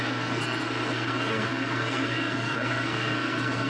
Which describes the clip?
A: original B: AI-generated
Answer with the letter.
B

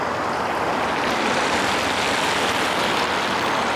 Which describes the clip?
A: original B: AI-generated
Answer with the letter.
A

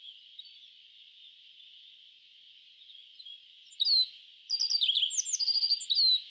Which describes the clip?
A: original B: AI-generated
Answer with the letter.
A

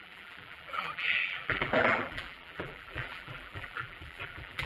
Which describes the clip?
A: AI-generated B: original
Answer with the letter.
A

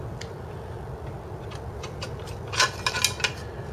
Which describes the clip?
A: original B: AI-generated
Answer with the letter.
A